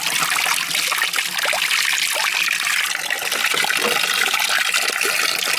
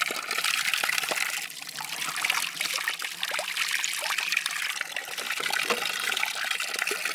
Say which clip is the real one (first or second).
first